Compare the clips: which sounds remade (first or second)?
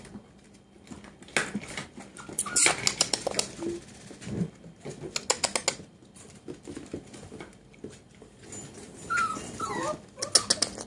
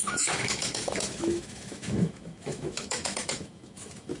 second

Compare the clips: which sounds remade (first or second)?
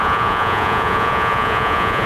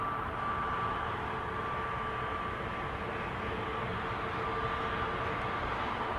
first